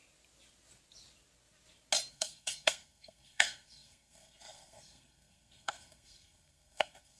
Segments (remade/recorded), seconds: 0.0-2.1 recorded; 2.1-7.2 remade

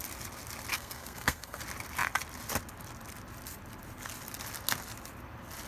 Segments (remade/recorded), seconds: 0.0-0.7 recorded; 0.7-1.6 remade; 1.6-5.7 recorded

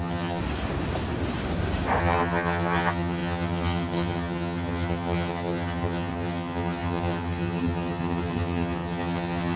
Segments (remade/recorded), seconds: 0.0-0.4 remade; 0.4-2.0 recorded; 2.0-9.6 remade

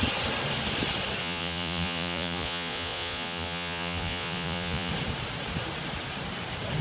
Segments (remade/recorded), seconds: 0.0-1.2 recorded; 1.2-4.9 remade; 4.9-6.8 recorded

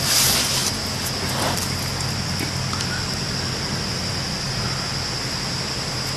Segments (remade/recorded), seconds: 0.0-6.2 recorded

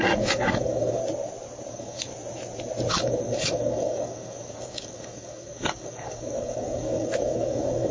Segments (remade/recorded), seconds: 0.0-1.0 remade; 1.0-1.7 recorded; 1.7-2.1 remade; 2.1-2.9 recorded; 2.9-7.9 remade

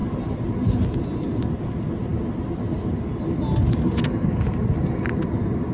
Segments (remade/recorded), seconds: 0.0-5.7 recorded

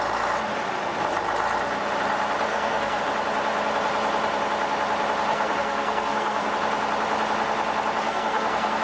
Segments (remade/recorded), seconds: 0.0-2.5 recorded; 2.5-3.0 remade; 3.0-5.3 recorded; 5.3-6.5 remade; 6.5-8.0 recorded; 8.0-8.8 remade